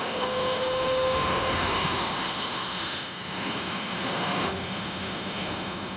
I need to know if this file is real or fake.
fake